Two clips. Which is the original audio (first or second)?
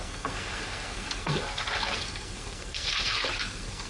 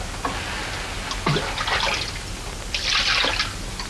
second